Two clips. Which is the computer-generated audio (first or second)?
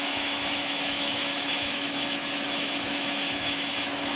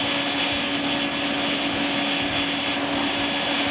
first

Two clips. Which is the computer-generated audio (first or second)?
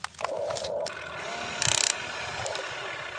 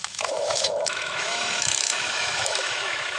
second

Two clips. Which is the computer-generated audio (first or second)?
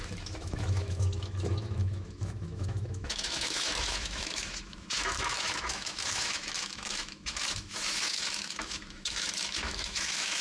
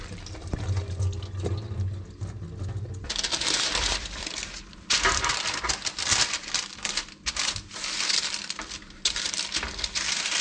first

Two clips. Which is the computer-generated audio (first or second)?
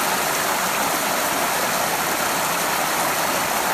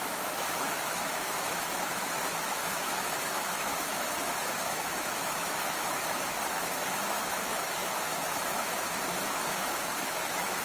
second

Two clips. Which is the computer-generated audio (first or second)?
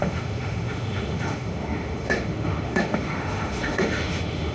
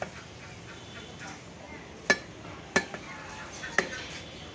first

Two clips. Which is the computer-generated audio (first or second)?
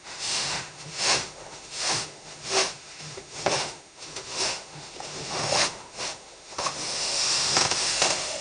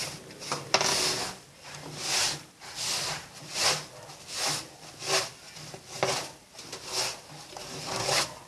first